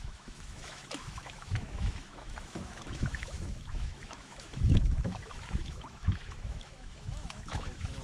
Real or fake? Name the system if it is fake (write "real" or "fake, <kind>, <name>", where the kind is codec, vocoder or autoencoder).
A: fake, autoencoder, DAC-VAE